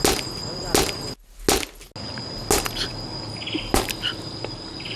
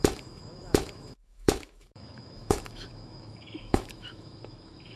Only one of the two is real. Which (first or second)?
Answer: first